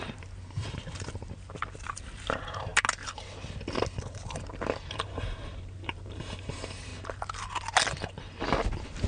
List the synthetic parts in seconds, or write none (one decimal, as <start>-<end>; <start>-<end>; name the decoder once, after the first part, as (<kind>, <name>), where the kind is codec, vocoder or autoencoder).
0.0-2.7 (vocoder, BigVGAN v2); 4.0-6.9